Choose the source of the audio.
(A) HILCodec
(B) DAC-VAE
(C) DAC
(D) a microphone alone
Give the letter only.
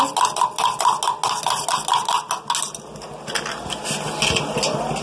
D